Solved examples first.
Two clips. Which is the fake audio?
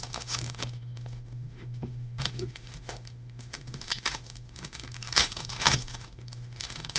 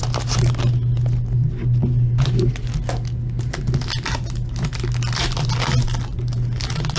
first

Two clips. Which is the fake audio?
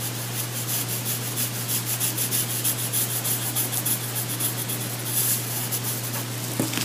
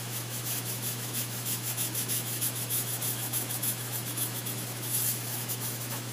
second